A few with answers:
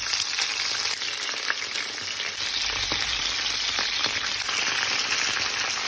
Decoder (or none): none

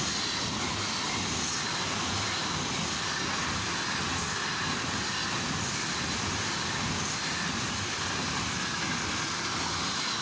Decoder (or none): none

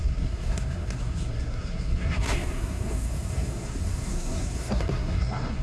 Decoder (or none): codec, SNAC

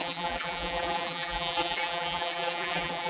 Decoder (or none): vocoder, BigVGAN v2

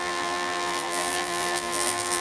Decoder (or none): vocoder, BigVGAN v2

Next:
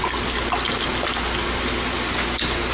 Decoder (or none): none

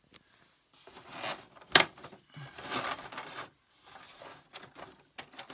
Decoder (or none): none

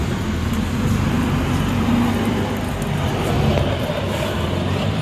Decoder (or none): none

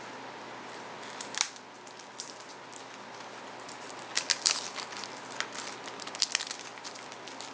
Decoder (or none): none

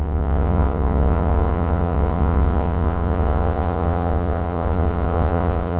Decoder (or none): vocoder, Vocos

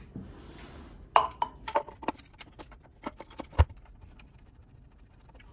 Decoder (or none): none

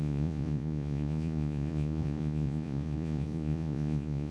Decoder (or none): vocoder, Vocos